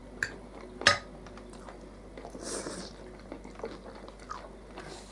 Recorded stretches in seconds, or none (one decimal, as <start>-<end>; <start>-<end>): 0.0-5.1